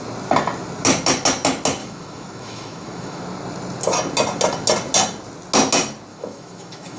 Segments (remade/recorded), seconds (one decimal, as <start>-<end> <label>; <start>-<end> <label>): 0.0-1.8 recorded; 1.8-3.2 remade; 3.2-6.1 recorded; 6.1-7.0 remade

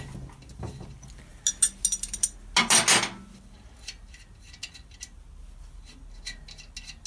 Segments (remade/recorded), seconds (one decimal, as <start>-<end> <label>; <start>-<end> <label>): 0.0-7.1 recorded

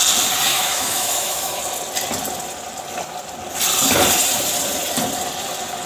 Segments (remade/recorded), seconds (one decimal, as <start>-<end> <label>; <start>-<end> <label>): 0.0-0.5 recorded; 0.5-1.6 remade; 1.6-5.9 recorded

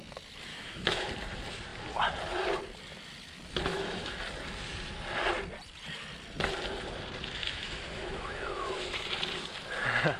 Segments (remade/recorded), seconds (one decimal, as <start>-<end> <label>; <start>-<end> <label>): 0.0-0.5 recorded; 0.5-1.1 remade; 1.1-3.7 recorded; 3.7-4.2 remade; 4.2-7.4 recorded; 7.4-9.1 remade; 9.1-10.2 recorded

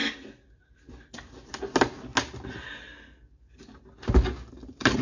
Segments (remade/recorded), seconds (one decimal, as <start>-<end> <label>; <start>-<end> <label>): 0.0-5.0 recorded

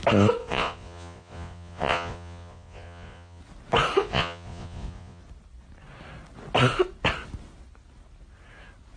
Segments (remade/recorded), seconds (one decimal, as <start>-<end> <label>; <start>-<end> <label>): 0.0-0.4 recorded; 0.4-3.4 remade; 3.4-4.0 recorded; 4.0-5.2 remade; 5.2-9.0 recorded